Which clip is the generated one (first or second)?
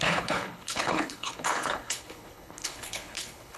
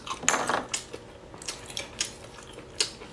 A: first